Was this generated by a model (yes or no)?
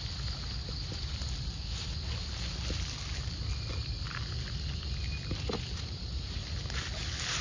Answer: no